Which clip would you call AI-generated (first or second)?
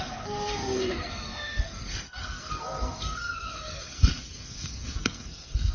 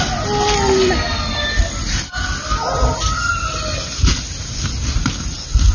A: first